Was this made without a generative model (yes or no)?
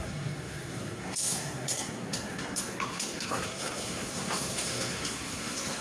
no